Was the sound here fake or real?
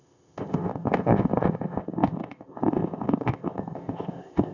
fake